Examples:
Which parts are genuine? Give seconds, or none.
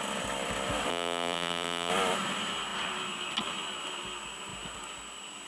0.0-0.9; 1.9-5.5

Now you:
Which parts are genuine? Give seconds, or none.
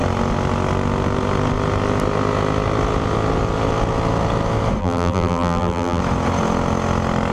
0.0-4.8; 6.0-7.3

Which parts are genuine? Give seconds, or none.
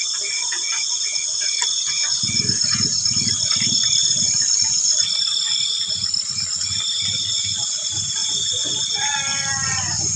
none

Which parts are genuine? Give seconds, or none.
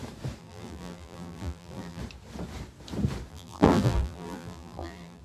0.0-0.4; 2.0-3.3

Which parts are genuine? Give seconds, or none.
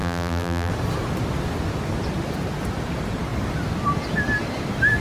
0.7-5.0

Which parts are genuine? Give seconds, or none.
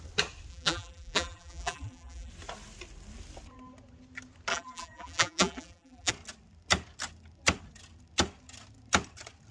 0.0-0.5; 2.3-4.5; 6.1-9.5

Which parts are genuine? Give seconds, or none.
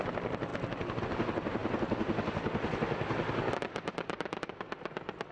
0.5-1.0; 1.6-3.6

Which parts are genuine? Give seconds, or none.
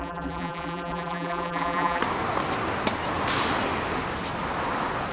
2.0-5.1